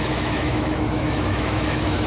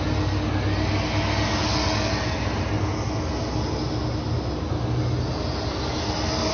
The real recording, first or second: second